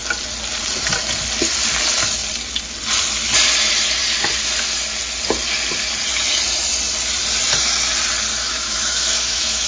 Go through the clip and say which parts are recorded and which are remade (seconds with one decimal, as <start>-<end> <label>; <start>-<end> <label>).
0.0-8.3 recorded; 8.3-9.7 remade